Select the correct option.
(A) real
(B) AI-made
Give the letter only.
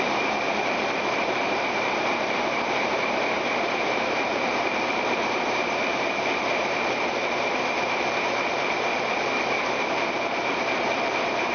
B